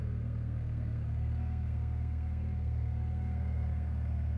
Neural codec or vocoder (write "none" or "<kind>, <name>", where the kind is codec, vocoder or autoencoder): codec, SNAC